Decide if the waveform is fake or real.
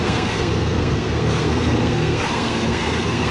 fake